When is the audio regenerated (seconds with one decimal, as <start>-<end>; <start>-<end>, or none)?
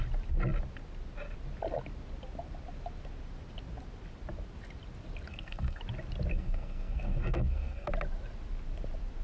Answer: 5.3-5.8; 6.3-7.9